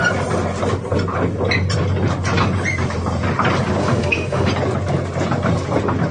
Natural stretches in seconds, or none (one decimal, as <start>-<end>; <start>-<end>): 0.0-3.8; 4.5-6.1